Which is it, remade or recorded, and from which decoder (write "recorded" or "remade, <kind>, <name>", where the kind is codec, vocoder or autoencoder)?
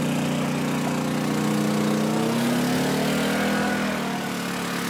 recorded